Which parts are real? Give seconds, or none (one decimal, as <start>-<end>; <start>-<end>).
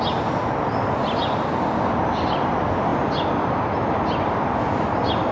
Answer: 0.0-5.3